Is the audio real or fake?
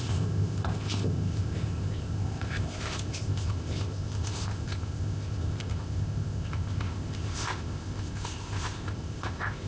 fake